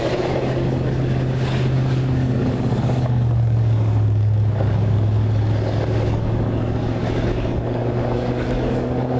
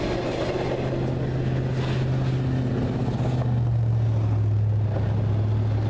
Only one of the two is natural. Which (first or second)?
second